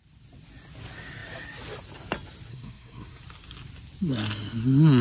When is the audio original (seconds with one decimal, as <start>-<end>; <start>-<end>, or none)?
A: 0.0-2.5; 3.2-5.0